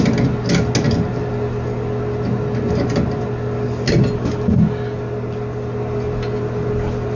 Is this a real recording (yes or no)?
yes